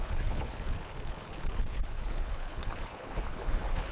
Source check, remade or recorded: remade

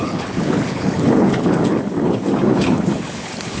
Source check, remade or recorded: remade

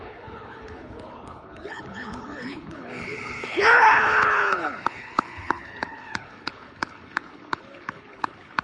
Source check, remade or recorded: remade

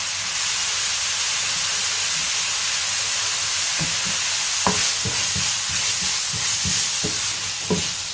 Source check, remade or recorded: recorded